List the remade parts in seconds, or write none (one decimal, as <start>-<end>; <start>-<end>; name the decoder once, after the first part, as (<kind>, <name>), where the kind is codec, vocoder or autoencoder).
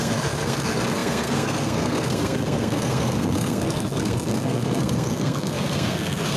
0.0-6.4 (codec, SNAC)